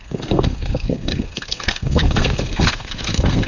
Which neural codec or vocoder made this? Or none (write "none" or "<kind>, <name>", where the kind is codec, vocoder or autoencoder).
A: codec, SNAC